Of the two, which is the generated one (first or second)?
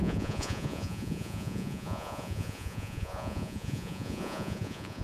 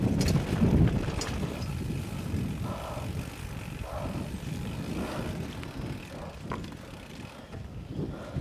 first